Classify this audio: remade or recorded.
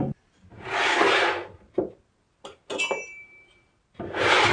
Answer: recorded